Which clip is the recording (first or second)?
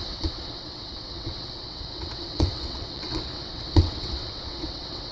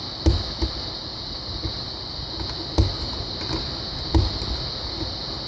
second